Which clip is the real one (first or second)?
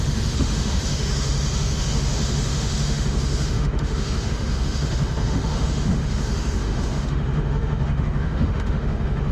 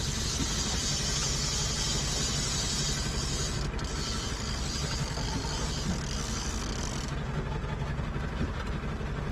second